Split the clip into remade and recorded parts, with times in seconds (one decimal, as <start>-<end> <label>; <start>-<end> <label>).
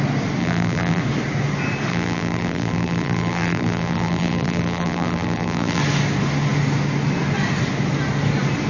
0.0-0.4 recorded; 0.4-1.0 remade; 1.0-1.9 recorded; 1.9-5.8 remade; 5.8-8.7 recorded